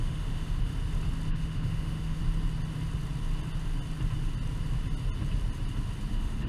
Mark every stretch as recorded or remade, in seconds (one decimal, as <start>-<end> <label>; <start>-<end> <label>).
0.0-0.7 remade; 0.7-1.3 recorded; 1.3-2.2 remade; 2.2-6.1 recorded; 6.1-6.5 remade